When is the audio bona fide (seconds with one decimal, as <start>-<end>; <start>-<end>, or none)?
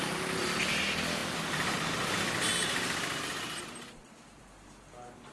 0.0-5.3